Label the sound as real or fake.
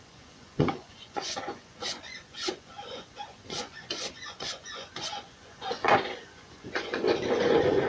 fake